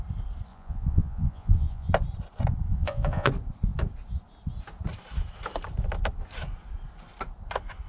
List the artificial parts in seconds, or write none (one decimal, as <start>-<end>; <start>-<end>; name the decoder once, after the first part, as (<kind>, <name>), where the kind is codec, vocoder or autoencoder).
0.5-1.9 (vocoder, Vocos); 2.7-3.3